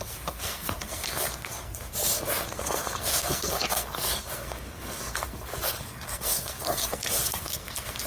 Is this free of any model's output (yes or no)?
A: no